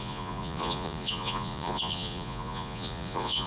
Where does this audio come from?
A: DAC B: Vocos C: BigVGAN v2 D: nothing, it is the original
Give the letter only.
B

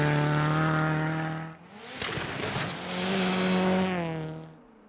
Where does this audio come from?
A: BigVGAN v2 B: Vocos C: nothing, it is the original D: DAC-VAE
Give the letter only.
C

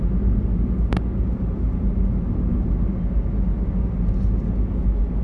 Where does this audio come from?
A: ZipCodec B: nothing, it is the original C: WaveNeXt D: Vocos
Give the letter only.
B